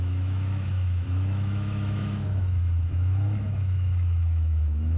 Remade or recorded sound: remade